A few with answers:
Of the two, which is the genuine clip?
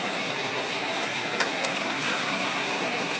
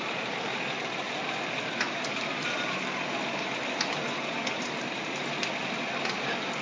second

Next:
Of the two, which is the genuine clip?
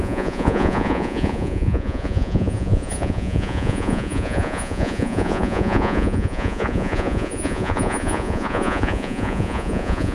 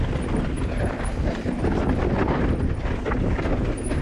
second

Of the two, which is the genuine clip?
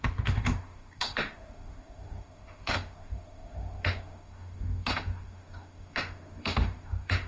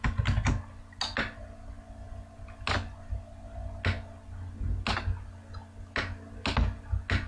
second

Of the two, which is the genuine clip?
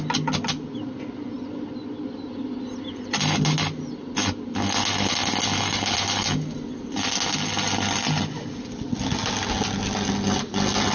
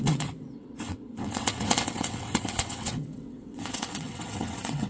first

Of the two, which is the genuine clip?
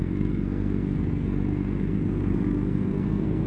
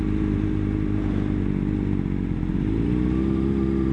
second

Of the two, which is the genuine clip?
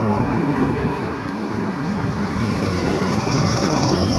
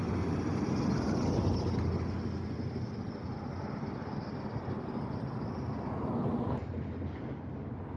second